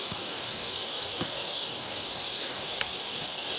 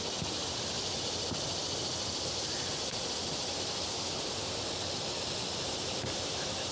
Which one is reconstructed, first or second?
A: first